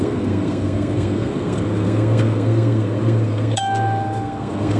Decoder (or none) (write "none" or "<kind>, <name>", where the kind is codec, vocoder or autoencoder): codec, SNAC